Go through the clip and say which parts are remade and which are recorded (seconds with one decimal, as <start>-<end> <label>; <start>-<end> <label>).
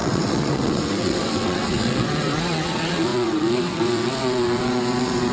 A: 0.0-5.3 remade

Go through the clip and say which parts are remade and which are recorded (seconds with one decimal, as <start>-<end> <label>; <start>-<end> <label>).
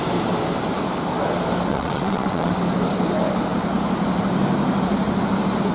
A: 0.0-1.7 recorded; 1.7-2.5 remade; 2.5-5.7 recorded